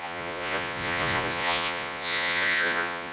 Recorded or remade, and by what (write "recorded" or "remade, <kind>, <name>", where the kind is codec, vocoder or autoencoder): remade, vocoder, Vocos